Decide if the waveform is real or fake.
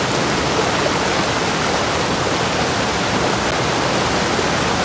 real